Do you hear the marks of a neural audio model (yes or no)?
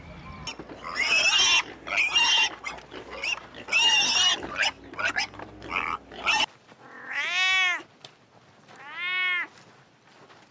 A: no